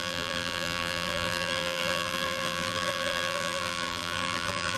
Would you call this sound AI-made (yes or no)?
yes